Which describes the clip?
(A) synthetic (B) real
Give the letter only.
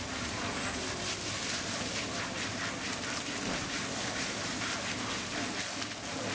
B